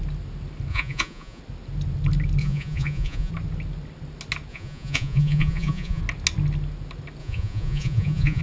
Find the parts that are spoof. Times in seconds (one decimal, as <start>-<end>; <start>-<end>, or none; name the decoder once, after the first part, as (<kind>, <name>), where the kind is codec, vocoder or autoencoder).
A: 0.7-1.4 (vocoder, Vocos); 2.4-3.3; 4.5-6.0; 7.2-8.4